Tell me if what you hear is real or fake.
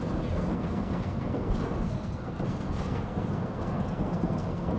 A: fake